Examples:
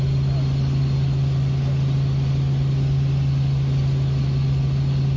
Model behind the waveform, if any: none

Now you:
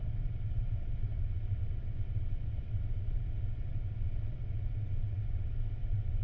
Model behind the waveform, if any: vocoder, WaveNeXt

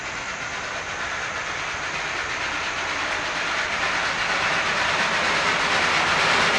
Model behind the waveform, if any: none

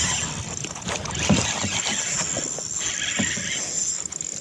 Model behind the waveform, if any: none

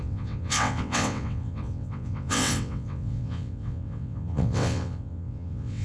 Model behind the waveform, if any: vocoder, WaveNeXt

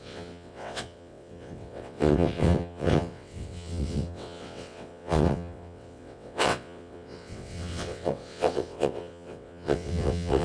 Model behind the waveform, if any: vocoder, WaveNeXt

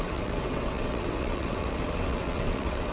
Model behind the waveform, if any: vocoder, WaveNeXt